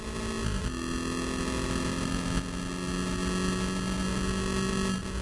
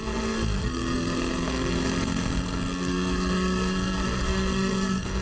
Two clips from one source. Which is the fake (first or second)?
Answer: second